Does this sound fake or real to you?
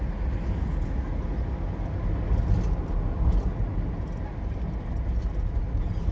real